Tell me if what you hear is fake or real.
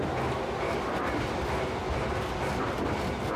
real